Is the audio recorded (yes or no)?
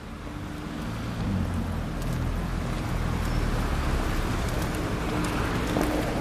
yes